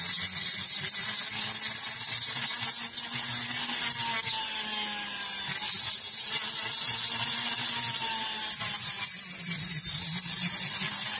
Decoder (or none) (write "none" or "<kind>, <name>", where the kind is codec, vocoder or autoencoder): none